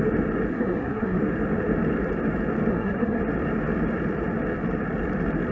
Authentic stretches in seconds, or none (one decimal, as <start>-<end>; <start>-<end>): 0.0-0.5; 1.2-2.7; 3.2-5.5